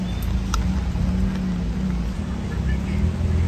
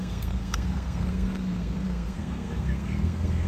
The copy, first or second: second